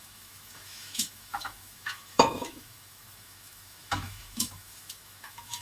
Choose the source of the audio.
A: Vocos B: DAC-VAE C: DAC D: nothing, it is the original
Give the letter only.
B